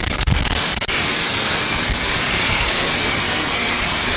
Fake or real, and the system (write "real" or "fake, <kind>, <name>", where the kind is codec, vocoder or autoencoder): fake, codec, SNAC